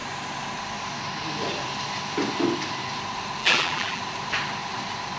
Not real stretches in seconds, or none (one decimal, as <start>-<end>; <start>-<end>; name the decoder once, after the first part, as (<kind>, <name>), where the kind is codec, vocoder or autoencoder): 3.4-4.0 (vocoder, BigVGAN v2)